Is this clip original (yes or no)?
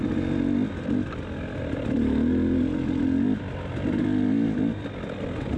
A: yes